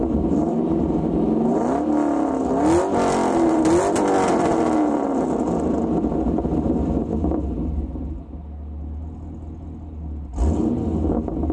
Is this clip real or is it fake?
real